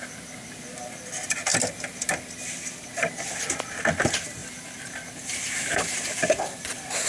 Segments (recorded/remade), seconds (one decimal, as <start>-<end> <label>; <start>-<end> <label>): 0.0-7.1 recorded